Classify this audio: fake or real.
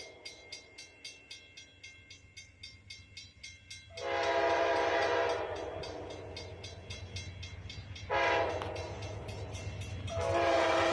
real